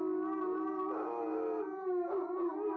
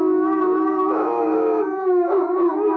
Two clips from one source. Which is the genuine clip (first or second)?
first